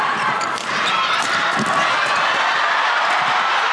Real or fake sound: real